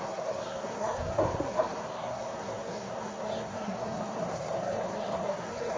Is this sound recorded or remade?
remade